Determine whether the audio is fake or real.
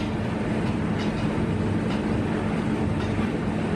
fake